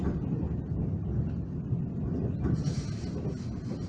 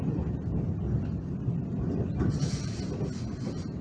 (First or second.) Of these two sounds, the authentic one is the first